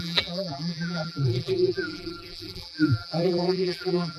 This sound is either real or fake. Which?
fake